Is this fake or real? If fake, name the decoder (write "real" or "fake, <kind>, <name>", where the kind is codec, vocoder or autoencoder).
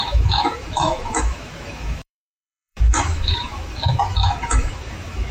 fake, autoencoder, DAC-VAE